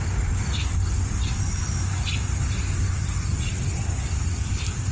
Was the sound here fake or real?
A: real